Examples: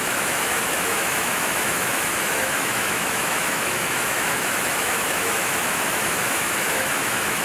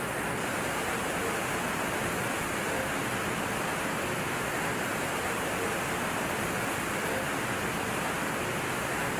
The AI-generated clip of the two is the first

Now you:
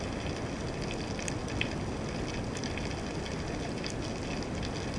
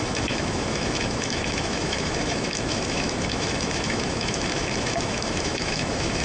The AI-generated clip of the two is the second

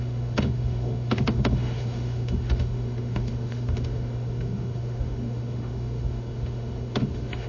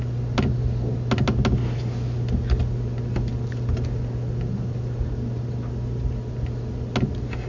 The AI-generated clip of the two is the first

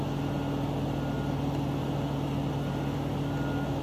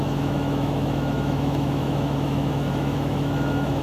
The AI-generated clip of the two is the second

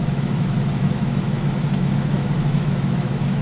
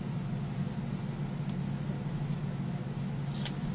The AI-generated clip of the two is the first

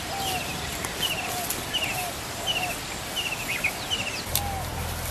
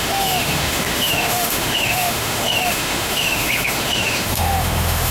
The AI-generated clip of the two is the second